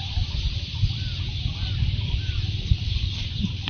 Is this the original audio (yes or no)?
no